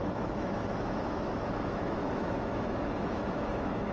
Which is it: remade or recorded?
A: remade